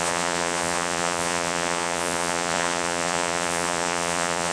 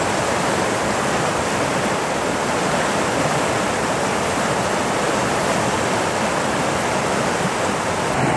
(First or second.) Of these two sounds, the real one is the second